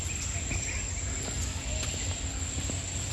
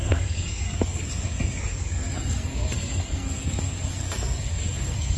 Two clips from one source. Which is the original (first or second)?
first